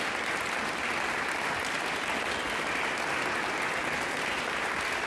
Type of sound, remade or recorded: recorded